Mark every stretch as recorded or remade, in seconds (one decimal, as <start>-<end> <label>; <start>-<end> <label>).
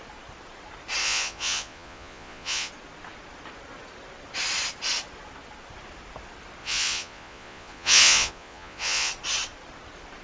0.0-1.0 recorded; 1.0-2.7 remade; 2.7-6.6 recorded; 6.6-9.1 remade; 9.1-10.2 recorded